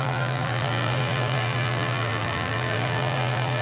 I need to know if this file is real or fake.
fake